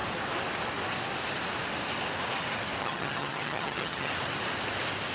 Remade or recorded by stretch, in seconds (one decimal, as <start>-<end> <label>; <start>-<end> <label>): 0.0-2.8 recorded; 2.8-4.1 remade; 4.1-5.1 recorded